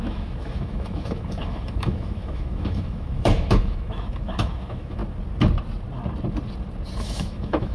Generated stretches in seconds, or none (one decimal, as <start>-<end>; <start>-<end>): 0.0-5.0; 7.0-7.7